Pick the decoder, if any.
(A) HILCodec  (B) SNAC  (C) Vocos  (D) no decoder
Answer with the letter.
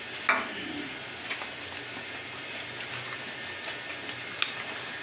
D